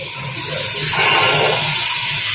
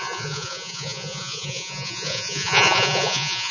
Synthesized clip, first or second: second